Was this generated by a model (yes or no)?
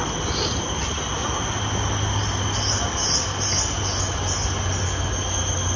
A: no